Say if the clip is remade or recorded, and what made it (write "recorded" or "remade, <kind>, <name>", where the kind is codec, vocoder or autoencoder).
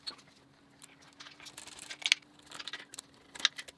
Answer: recorded